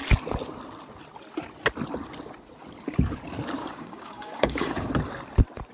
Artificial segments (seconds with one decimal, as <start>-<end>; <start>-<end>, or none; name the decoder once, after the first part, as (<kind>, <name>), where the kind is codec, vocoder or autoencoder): 3.6-4.9 (codec, DAC)